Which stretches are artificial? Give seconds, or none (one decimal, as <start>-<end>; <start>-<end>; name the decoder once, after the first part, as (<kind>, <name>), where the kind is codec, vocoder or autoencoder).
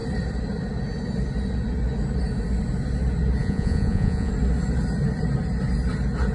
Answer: 3.4-4.3 (vocoder, Vocos)